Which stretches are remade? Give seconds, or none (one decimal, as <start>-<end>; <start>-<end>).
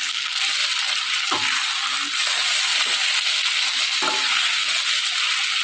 0.6-1.2